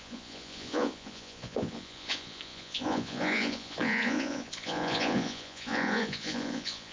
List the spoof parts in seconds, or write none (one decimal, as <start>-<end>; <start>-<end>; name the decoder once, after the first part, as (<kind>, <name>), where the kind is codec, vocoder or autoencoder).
0.0-6.9 (vocoder, Vocos)